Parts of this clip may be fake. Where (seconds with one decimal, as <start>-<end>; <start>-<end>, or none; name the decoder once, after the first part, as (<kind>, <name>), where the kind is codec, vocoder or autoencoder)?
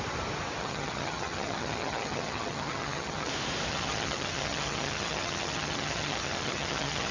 0.6-3.3 (vocoder, HiFi-GAN); 3.7-7.1